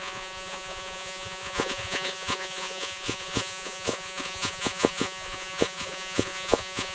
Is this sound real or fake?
fake